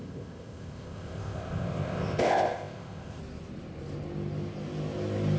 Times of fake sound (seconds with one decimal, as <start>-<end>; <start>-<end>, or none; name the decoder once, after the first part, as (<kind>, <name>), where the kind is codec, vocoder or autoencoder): 0.0-3.2 (codec, ZipCodec)